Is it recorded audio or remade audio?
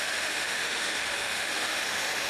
remade